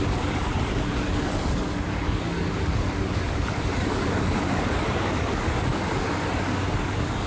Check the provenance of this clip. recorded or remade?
remade